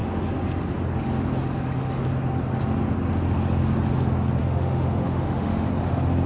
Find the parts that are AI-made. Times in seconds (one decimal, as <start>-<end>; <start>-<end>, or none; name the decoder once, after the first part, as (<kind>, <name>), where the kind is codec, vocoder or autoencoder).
4.4-5.7 (autoencoder, DAC-VAE)